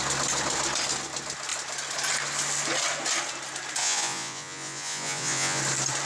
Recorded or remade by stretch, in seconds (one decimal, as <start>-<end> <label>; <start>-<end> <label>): 0.0-3.8 recorded; 3.8-5.6 remade; 5.6-6.1 recorded